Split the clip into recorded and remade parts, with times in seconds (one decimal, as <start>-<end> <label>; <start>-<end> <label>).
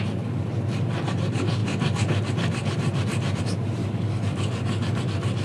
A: 0.0-3.8 recorded; 3.8-5.0 remade; 5.0-5.4 recorded